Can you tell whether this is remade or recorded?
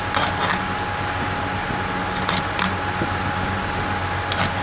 recorded